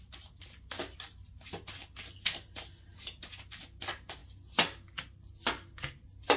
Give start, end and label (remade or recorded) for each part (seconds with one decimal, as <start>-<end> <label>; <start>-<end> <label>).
0.0-6.4 recorded

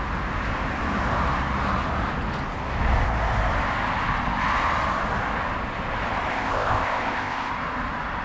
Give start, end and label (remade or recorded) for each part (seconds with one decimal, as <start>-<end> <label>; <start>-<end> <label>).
0.0-6.3 recorded; 6.3-7.5 remade; 7.5-8.2 recorded

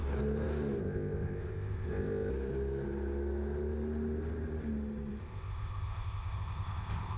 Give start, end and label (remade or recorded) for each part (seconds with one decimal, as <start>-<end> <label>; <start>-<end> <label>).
0.0-0.8 recorded; 0.8-2.3 remade; 2.3-5.2 recorded; 5.2-7.2 remade

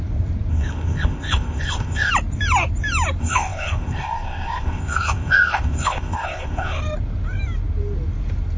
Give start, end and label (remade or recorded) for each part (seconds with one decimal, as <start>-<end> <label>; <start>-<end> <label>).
0.0-0.5 recorded; 0.5-2.1 remade; 2.1-3.2 recorded; 3.2-6.8 remade; 6.8-8.6 recorded

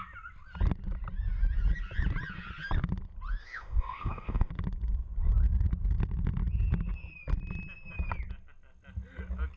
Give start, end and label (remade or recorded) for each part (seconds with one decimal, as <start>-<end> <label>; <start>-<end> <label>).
0.0-3.4 recorded; 3.4-4.5 remade; 4.5-9.6 recorded

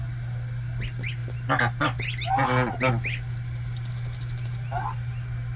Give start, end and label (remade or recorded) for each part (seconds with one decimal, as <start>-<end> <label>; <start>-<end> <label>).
0.0-5.6 recorded